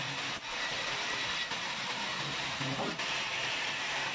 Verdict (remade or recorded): remade